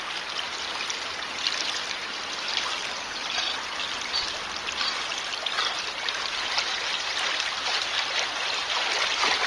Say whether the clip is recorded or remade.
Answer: recorded